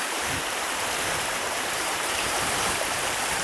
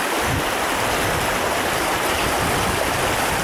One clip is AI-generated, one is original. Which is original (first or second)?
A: second